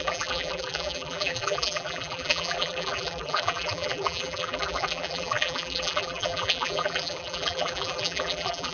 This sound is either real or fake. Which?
fake